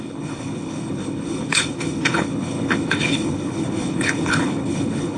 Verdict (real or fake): fake